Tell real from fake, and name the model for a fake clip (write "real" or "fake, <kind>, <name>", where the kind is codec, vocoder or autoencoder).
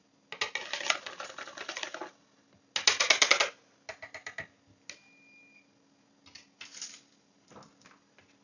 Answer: real